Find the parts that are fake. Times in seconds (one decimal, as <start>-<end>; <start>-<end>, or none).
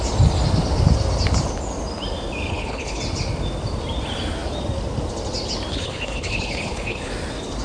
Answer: 2.5-3.0; 5.7-7.1